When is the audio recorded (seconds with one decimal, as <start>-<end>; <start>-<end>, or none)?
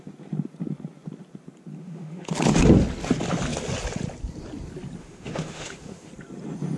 0.0-1.8; 2.3-5.0; 6.1-6.8